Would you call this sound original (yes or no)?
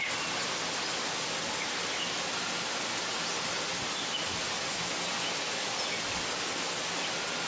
yes